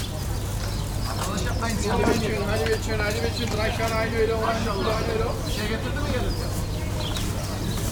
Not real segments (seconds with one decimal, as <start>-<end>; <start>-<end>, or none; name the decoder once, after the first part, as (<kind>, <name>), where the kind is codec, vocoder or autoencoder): none